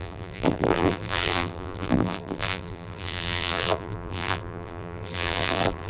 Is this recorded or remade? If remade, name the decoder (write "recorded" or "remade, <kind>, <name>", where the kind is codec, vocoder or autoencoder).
remade, vocoder, BigVGAN v2